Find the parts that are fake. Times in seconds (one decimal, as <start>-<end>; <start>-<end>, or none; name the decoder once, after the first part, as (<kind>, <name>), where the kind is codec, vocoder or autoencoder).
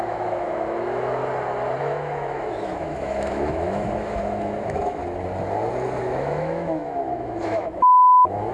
0.0-1.2 (autoencoder, DAC-VAE); 1.8-5.0; 6.0-8.5